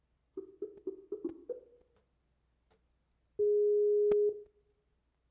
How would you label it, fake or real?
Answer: real